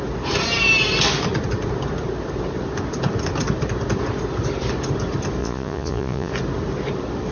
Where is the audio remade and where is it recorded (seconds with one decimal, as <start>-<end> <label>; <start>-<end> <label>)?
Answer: 0.0-5.4 recorded; 5.4-6.3 remade; 6.3-7.3 recorded